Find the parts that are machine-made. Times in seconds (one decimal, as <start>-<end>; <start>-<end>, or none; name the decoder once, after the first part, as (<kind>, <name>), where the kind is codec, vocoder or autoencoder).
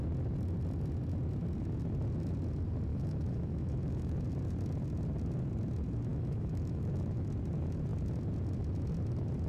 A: 2.9-4.2 (autoencoder, DAC-VAE); 6.1-7.3